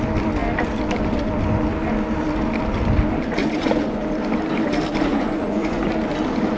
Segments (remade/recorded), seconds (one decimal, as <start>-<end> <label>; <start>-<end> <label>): 0.0-3.4 recorded; 3.4-4.0 remade; 4.0-5.1 recorded; 5.1-5.8 remade; 5.8-6.6 recorded